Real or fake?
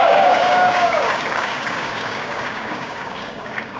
fake